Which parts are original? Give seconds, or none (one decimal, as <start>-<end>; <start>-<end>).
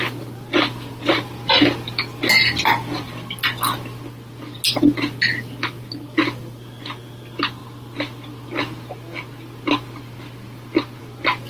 0.0-11.5